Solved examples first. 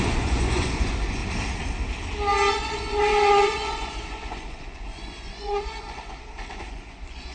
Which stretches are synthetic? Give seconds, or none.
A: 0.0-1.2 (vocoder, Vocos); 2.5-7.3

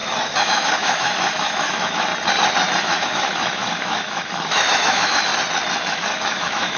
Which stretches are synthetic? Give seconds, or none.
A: 0.0-2.1 (autoencoder, DAC-VAE); 2.8-5.3; 5.9-6.8

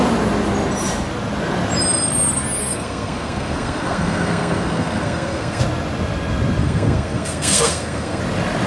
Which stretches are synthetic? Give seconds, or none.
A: 2.6-5.6 (codec, SNAC); 6.6-8.2

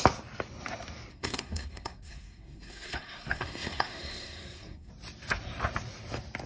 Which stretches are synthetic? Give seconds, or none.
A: 1.1-4.9 (codec, SNAC)

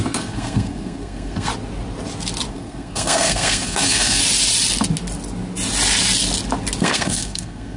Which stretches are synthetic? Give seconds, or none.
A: 0.0-1.5 (codec, SNAC); 2.5-4.2; 6.8-7.8